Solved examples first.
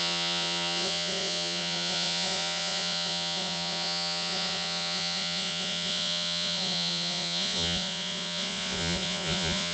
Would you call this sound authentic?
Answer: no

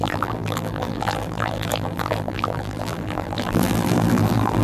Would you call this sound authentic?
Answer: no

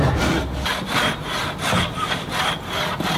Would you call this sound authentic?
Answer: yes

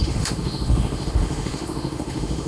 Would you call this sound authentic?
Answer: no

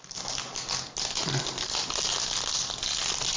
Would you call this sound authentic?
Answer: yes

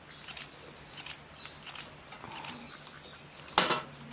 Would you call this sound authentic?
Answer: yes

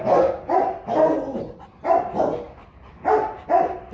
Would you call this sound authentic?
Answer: yes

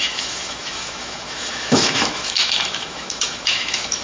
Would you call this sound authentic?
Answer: no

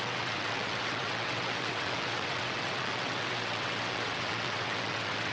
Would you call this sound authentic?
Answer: no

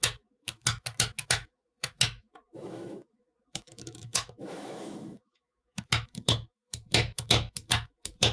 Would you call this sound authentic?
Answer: no